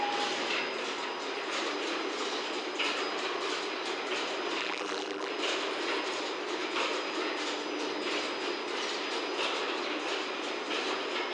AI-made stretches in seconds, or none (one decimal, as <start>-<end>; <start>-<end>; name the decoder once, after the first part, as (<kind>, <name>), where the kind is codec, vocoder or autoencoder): 4.6-5.3 (vocoder, BigVGAN v2)